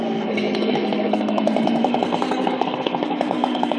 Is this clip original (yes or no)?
no